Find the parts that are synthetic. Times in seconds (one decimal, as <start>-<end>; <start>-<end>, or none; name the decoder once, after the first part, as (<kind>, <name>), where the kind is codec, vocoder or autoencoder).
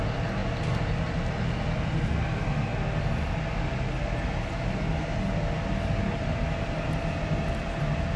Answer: none